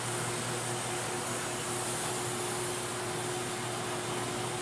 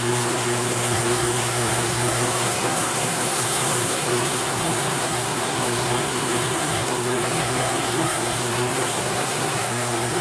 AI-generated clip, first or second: second